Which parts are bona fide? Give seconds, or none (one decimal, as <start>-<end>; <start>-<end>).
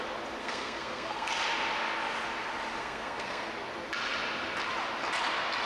0.0-0.4; 1.3-2.8; 3.5-5.7